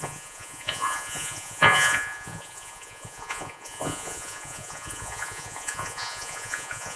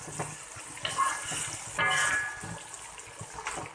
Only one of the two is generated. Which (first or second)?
first